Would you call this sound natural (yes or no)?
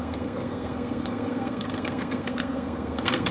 no